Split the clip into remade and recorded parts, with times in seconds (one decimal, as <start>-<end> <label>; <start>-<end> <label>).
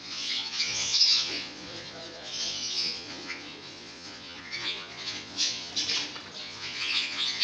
0.0-5.7 remade; 5.7-6.4 recorded; 6.4-7.4 remade